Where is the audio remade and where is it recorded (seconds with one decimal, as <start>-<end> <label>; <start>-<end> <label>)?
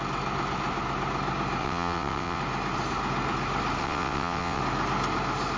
0.0-1.6 recorded; 1.6-2.4 remade; 2.4-3.8 recorded; 3.8-4.6 remade; 4.6-5.6 recorded